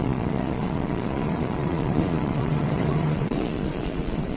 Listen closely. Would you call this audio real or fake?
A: fake